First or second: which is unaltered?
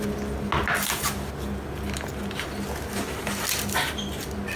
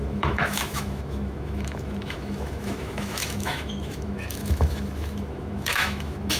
first